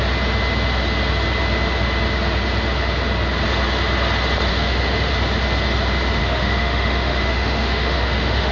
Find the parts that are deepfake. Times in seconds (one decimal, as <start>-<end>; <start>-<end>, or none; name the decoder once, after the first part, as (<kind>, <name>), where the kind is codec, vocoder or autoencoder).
4.5-5.1 (autoencoder, DAC-VAE); 6.2-8.5